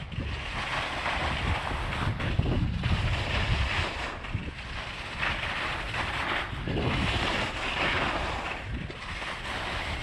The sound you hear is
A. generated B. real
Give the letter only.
B